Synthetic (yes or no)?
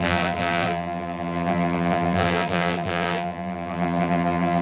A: yes